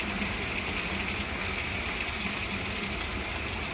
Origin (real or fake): real